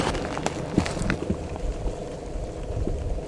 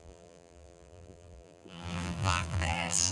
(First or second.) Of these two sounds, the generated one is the second